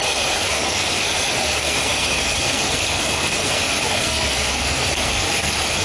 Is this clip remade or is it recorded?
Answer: remade